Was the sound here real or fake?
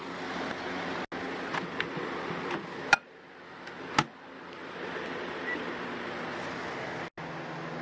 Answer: real